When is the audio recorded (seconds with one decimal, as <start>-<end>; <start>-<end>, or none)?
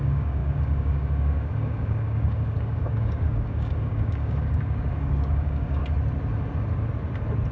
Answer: 5.8-7.5